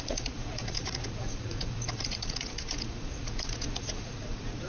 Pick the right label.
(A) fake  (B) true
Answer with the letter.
A